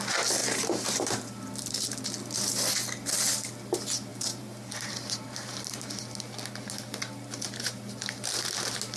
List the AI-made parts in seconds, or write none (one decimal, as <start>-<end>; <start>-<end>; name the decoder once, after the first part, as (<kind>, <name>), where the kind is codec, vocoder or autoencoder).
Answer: 0.4-1.5 (vocoder, BigVGAN v2); 4.1-6.0